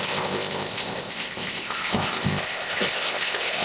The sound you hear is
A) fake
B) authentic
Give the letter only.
A